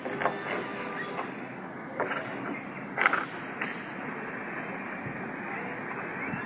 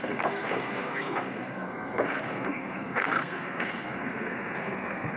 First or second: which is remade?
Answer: second